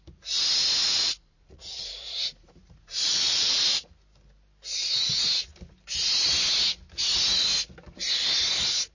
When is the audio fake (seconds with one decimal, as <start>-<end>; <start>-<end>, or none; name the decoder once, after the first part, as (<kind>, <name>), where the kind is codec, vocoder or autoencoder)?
0.8-3.8 (vocoder, Vocos)